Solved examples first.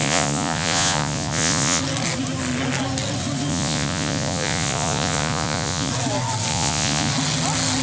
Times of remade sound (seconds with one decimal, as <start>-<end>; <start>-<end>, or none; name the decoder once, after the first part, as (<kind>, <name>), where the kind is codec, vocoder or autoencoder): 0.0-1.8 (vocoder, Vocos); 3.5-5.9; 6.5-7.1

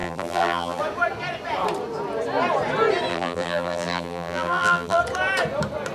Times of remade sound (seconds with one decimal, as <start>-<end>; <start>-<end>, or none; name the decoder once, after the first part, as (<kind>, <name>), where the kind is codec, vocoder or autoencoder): 0.0-0.8 (vocoder, BigVGAN v2); 3.1-5.0

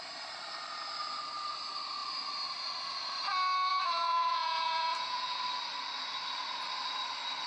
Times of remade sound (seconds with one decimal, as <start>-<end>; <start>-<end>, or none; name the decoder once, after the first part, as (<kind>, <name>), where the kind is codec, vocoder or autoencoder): 3.7-5.4 (vocoder, Vocos)

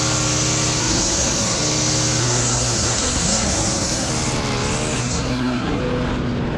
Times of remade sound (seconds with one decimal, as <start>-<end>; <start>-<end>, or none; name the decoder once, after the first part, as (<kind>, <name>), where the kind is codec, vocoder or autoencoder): 0.8-1.6 (codec, SNAC); 2.2-4.1; 5.0-5.8